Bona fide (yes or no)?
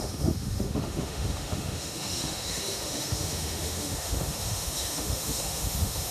no